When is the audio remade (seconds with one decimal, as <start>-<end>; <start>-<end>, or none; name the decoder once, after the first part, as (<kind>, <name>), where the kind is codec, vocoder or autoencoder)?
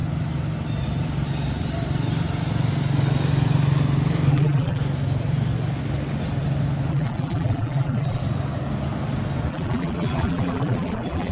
4.3-4.8 (vocoder, BigVGAN v2); 6.9-8.2; 9.5-11.3